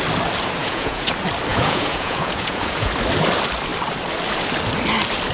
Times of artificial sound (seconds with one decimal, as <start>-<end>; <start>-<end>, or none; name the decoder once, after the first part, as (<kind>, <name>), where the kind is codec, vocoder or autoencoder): 0.6-1.1 (vocoder, Vocos); 1.5-2.9